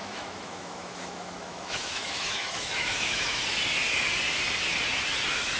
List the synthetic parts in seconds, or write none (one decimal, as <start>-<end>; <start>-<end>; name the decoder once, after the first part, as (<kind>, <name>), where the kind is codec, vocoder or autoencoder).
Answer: 0.0-3.4 (autoencoder, DAC-VAE)

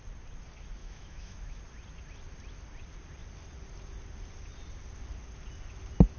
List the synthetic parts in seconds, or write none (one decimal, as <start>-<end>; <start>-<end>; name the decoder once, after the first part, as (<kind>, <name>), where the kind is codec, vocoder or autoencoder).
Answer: 0.8-1.6 (autoencoder, DAC-VAE)

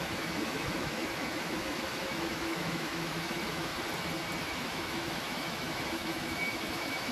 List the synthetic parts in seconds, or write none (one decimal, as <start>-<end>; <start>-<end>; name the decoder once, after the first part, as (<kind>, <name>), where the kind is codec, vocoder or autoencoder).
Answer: 0.0-3.7 (autoencoder, DAC-VAE); 4.4-7.1

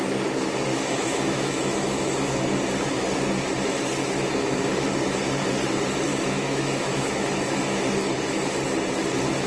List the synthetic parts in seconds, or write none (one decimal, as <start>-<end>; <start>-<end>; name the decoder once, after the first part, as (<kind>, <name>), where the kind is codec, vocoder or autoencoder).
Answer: 0.7-2.4 (autoencoder, DAC-VAE); 4.0-4.6; 6.1-7.9

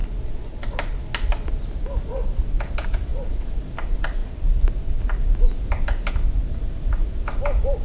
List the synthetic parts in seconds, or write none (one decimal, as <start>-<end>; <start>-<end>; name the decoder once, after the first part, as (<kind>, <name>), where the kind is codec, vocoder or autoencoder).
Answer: none